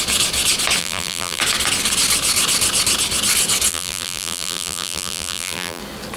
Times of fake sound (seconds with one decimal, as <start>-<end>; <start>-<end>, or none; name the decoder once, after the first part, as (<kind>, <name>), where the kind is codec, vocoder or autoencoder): 0.8-1.4 (vocoder, BigVGAN v2); 3.7-5.8